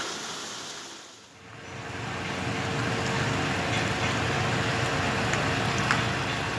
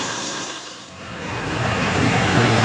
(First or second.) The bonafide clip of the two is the first